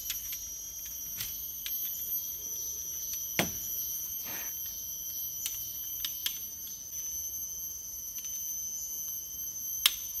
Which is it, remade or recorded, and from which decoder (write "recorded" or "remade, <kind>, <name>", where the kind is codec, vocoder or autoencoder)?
recorded